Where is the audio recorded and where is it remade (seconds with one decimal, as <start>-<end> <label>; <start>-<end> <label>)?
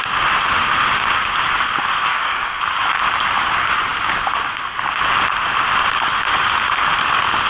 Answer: 0.0-2.1 recorded; 2.1-2.6 remade; 2.6-7.5 recorded